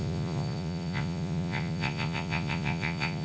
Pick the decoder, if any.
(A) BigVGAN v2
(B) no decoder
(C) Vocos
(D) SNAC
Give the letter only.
C